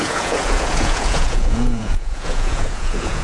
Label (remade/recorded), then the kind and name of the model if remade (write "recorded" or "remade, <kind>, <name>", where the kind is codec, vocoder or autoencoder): remade, vocoder, Vocos